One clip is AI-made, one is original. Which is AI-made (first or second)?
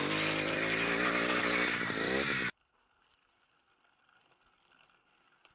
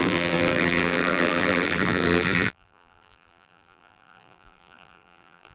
second